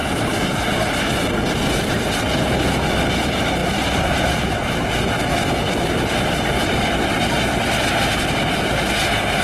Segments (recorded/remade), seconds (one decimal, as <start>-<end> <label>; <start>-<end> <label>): 0.0-0.6 remade; 0.6-3.6 recorded; 3.6-5.1 remade; 5.1-9.4 recorded